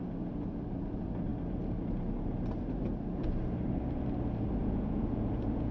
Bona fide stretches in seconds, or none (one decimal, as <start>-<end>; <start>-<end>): 0.0-4.6